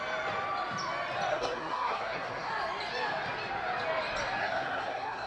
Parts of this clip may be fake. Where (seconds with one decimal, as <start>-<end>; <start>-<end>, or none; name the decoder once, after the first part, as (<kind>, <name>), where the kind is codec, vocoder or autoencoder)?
1.3-2.5 (codec, SNAC); 4.4-5.3